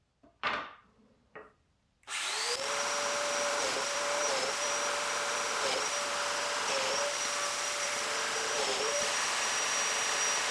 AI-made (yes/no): yes